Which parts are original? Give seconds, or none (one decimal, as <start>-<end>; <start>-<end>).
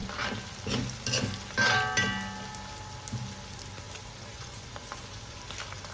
0.0-4.3; 5.4-5.9